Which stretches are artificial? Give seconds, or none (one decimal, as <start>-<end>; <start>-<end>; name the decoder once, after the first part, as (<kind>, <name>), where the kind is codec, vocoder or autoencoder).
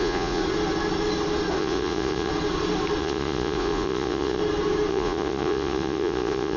0.0-0.4 (vocoder, Vocos); 1.6-2.3; 3.0-4.4; 4.9-6.6